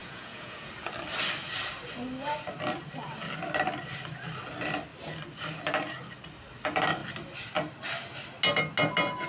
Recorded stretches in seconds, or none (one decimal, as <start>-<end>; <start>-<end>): 0.7-9.3